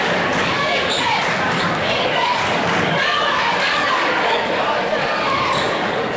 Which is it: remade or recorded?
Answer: remade